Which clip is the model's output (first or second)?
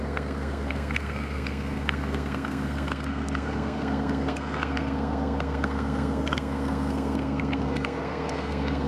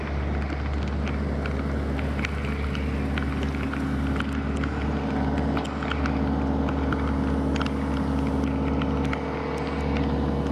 first